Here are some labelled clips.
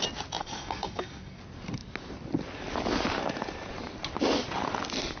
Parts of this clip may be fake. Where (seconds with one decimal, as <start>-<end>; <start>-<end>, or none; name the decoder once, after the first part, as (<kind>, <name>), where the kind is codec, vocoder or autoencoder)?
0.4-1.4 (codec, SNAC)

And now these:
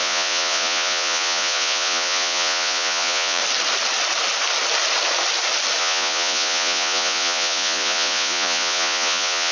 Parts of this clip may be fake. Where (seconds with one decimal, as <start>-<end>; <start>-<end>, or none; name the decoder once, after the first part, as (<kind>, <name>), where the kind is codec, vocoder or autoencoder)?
0.0-3.4 (vocoder, Vocos); 5.8-9.5

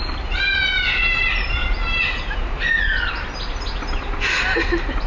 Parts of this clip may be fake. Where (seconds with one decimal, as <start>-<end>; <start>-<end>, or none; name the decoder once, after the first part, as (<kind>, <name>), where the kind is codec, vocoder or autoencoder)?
none

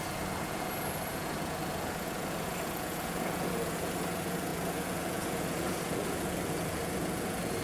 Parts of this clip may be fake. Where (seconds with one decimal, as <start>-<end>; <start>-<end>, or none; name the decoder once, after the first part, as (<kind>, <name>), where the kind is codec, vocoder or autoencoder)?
0.0-7.6 (vocoder, Vocos)